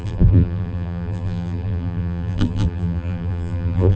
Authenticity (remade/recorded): remade